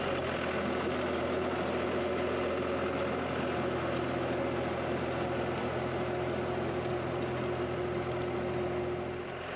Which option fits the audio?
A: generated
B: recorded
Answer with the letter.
B